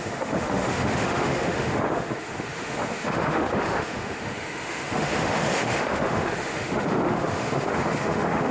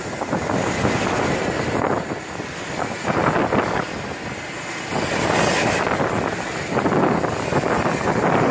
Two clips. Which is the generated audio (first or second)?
first